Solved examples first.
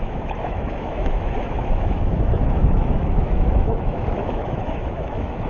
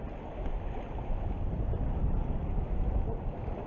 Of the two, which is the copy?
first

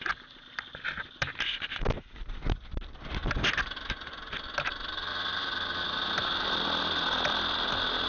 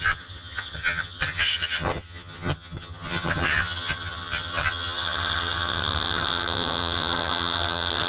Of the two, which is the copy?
second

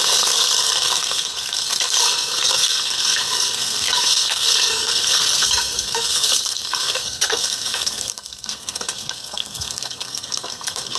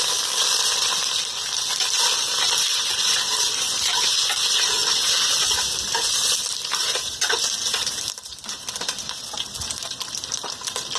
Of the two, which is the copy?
first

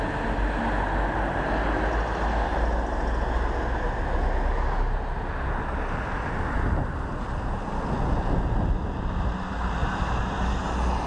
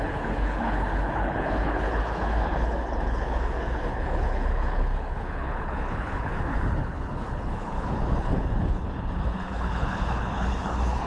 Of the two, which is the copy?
second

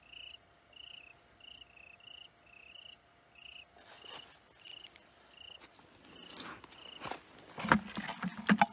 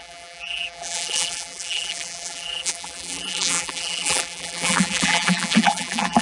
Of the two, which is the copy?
second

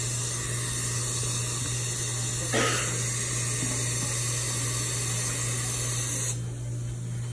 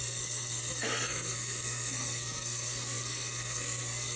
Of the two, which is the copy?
second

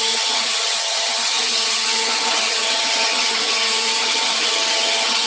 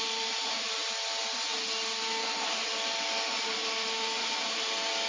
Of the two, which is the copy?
first